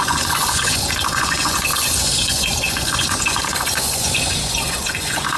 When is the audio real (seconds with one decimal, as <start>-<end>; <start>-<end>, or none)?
none